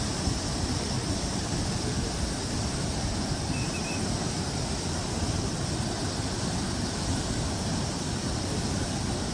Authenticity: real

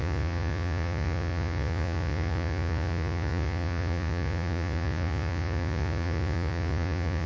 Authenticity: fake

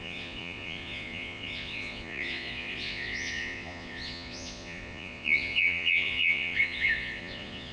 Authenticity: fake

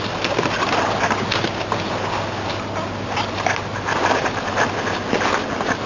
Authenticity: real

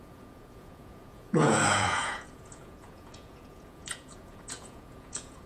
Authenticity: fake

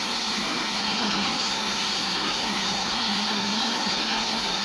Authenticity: fake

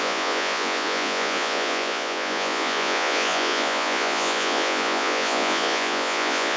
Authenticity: fake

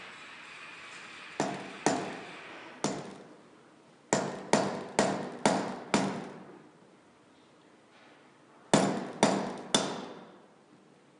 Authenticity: real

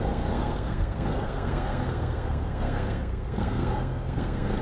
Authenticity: fake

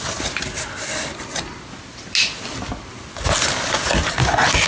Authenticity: real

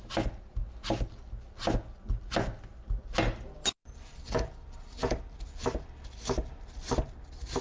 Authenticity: real